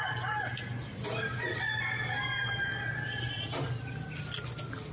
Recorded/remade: recorded